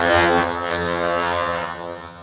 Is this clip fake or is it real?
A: fake